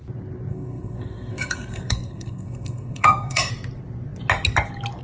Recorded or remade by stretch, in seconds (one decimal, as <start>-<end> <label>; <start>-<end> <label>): 0.0-0.5 recorded; 0.5-3.5 remade; 3.5-5.0 recorded